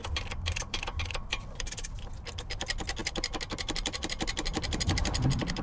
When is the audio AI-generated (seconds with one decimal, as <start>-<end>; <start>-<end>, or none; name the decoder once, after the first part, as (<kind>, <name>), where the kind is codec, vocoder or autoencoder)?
0.0-0.8 (vocoder, BigVGAN v2); 1.3-2.2; 3.0-5.6